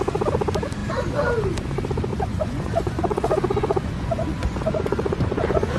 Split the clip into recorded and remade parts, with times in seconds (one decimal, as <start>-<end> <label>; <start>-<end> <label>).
0.0-2.1 recorded; 2.1-5.8 remade